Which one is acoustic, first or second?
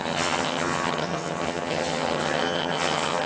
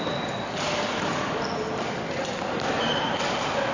second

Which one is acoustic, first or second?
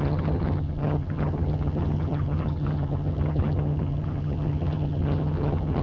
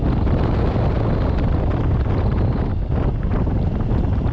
second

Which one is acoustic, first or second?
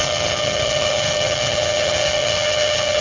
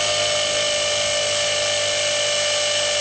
second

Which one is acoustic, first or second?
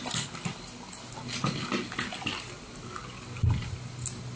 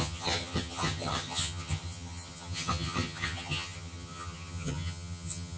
first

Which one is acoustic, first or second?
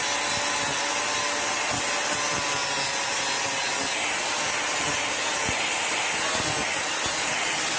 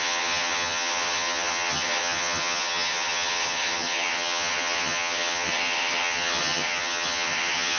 first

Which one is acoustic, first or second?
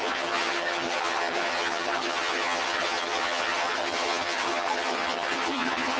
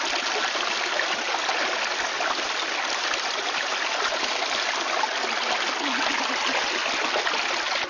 second